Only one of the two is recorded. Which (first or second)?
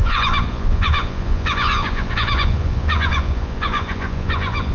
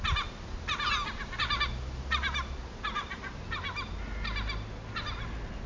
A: second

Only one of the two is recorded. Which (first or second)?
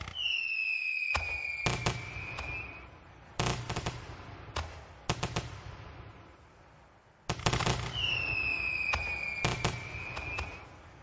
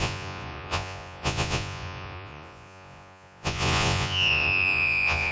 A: first